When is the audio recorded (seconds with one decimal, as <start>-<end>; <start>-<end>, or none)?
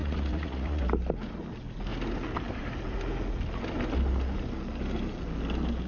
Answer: 0.8-5.9